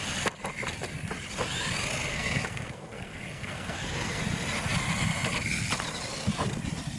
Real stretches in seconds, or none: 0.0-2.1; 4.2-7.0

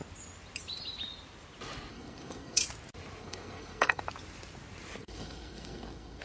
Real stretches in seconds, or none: 0.0-1.9; 2.6-3.2; 4.0-5.0